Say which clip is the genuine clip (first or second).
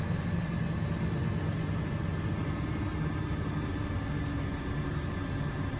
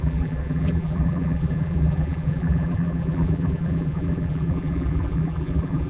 first